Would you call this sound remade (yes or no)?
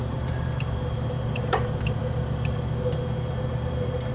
yes